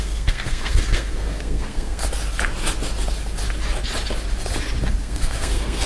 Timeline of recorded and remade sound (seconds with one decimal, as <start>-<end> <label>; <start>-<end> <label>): 0.0-2.0 remade; 2.0-5.0 recorded; 5.0-5.9 remade